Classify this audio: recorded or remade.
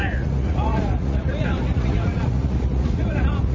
remade